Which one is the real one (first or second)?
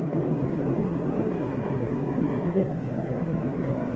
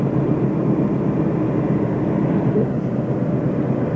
second